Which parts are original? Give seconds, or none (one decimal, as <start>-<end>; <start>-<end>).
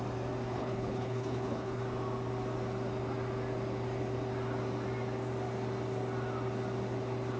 0.0-0.5; 1.8-7.4